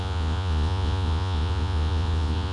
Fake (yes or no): yes